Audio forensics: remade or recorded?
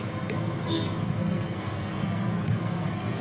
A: remade